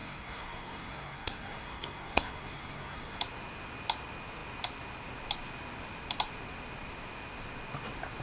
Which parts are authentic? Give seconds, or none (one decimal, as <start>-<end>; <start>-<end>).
3.2-8.2